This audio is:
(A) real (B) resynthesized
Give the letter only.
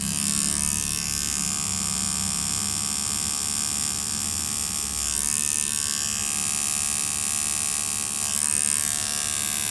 A